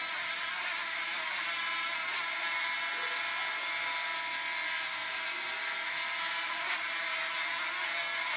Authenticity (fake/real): real